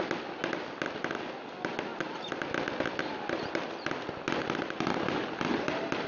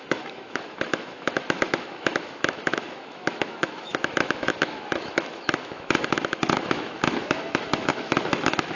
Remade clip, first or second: second